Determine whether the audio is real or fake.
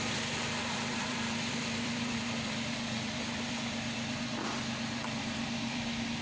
fake